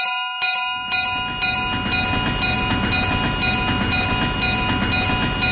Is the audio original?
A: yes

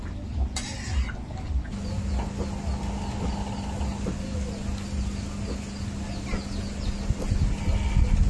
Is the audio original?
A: yes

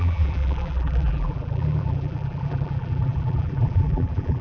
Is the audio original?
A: no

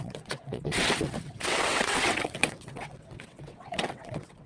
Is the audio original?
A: no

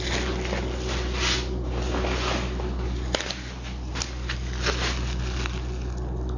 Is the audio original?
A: yes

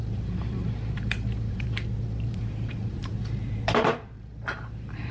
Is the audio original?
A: no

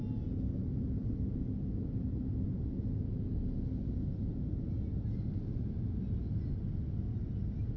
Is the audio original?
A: yes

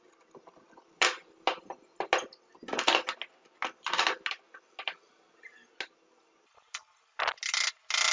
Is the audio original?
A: yes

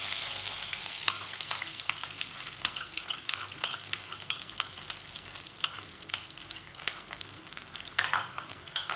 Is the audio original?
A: no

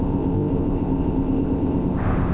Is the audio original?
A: no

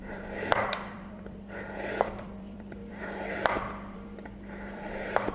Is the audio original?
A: no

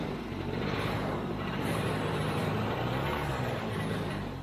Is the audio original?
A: no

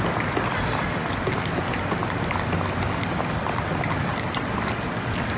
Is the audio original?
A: no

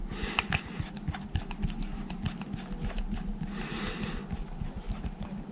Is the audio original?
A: yes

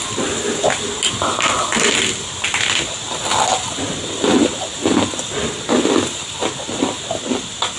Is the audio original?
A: yes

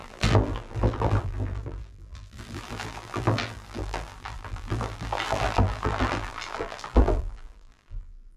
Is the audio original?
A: no